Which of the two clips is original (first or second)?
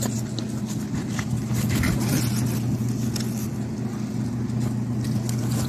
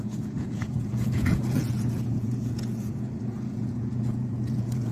first